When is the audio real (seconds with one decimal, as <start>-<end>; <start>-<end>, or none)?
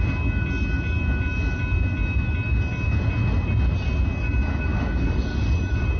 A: 0.0-4.7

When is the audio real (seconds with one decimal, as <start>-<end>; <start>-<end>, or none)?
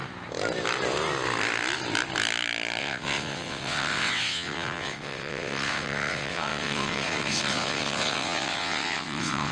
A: 0.0-2.8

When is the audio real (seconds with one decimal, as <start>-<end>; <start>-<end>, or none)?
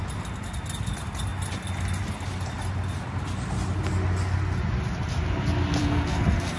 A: 0.0-5.8